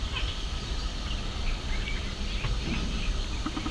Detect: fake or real real